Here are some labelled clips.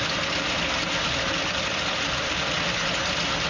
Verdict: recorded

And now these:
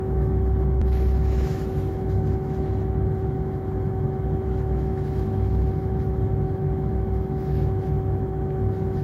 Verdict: remade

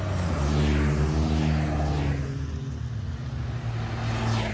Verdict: recorded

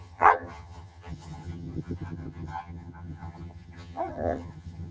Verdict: remade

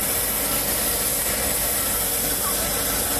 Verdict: recorded